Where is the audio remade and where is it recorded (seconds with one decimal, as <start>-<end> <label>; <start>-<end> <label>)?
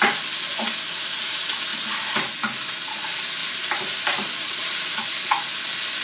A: 0.0-3.4 recorded; 3.4-5.0 remade; 5.0-6.0 recorded